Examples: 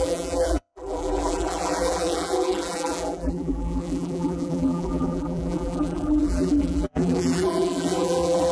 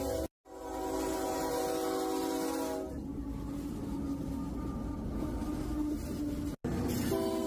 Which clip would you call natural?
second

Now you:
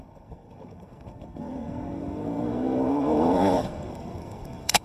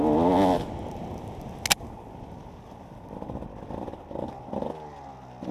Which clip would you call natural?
second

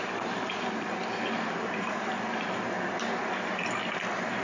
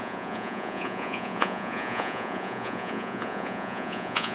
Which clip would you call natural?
first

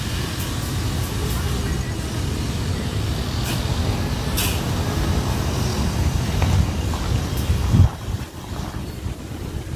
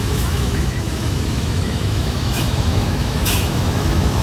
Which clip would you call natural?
first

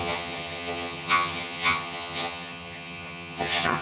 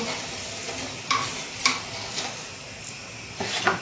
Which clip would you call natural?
second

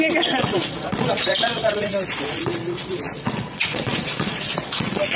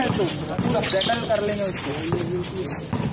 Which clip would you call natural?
second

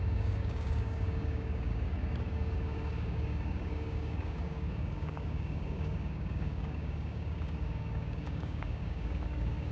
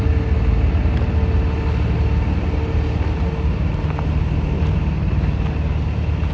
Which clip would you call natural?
second